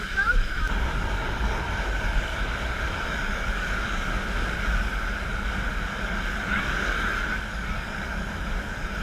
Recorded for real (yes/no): no